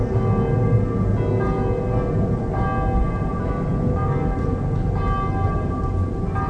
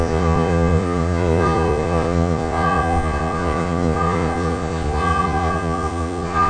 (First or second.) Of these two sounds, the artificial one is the second